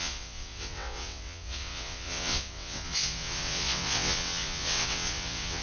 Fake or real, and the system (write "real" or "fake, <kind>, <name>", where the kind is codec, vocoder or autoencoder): fake, vocoder, WaveNeXt